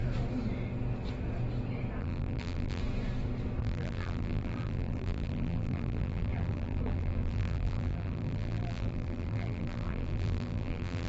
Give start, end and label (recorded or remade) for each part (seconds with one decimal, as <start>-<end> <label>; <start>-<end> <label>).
0.0-2.0 recorded; 2.0-2.8 remade; 2.8-3.6 recorded; 3.6-11.1 remade